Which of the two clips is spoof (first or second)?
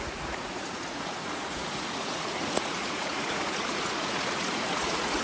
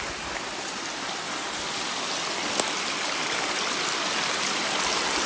first